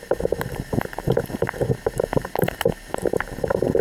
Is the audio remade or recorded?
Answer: remade